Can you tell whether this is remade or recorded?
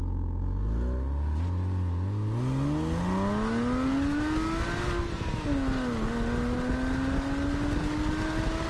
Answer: recorded